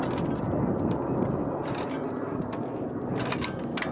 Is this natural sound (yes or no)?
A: yes